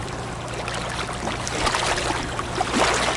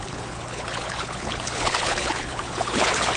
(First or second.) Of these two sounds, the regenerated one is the second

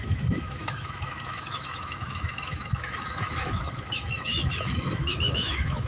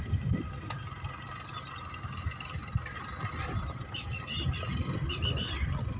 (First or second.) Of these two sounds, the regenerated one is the first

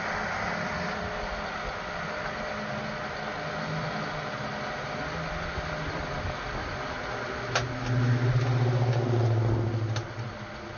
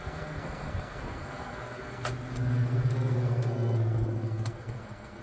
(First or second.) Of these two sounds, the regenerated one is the second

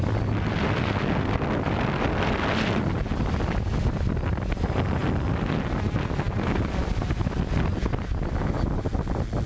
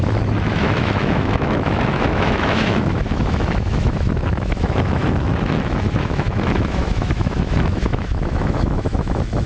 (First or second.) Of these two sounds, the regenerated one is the second